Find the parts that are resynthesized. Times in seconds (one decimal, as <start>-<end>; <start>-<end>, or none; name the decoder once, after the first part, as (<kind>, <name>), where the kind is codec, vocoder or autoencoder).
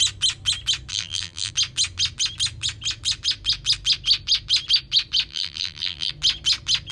0.9-1.5 (vocoder, BigVGAN v2); 5.3-6.1